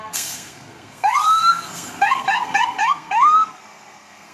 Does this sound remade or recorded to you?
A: remade